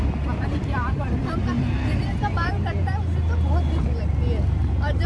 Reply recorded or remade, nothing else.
recorded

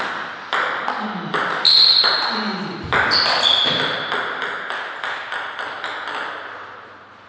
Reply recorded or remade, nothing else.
recorded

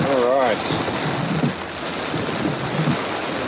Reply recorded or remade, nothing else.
recorded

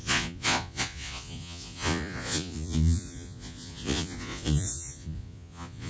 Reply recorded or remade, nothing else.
remade